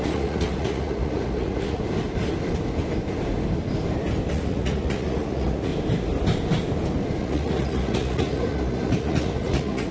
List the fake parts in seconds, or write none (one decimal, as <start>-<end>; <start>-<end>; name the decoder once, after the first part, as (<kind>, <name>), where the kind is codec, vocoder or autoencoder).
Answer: 0.0-1.8 (vocoder, Vocos); 4.3-5.7; 7.2-9.9